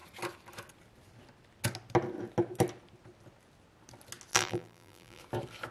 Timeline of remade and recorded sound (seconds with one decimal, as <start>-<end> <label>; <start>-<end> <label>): 0.0-4.3 recorded; 4.3-5.2 remade; 5.2-5.7 recorded